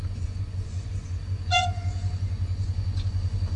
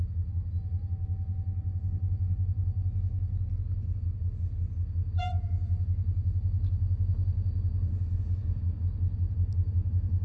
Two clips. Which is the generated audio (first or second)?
first